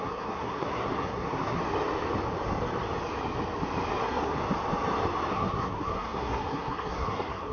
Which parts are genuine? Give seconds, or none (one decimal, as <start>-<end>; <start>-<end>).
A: 1.6-4.0; 4.4-5.3